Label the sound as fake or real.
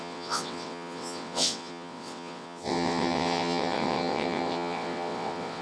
fake